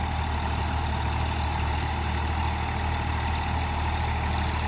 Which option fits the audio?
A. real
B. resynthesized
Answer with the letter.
A